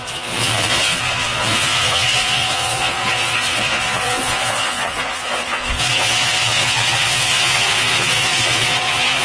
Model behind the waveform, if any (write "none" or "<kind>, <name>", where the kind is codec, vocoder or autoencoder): vocoder, Vocos